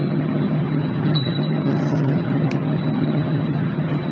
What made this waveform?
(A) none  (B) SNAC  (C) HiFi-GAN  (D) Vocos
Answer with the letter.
C